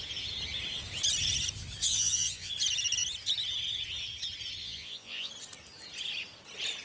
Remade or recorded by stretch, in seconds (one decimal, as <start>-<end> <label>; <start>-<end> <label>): 0.0-1.8 recorded; 1.8-2.5 remade; 2.5-4.6 recorded; 4.6-5.3 remade; 5.3-6.8 recorded